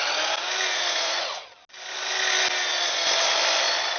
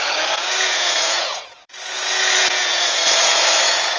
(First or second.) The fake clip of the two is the second